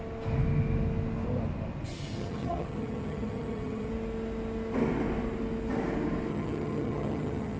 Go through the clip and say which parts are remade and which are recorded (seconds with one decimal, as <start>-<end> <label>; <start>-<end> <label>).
0.0-2.0 recorded; 2.0-3.9 remade; 3.9-6.3 recorded; 6.3-7.6 remade